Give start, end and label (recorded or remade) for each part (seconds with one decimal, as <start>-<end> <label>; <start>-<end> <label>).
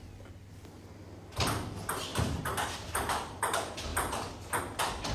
0.0-2.1 recorded; 2.1-3.4 remade; 3.4-5.1 recorded